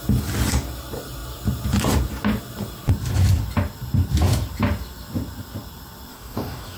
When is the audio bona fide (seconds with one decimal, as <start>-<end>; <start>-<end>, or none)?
0.0-6.1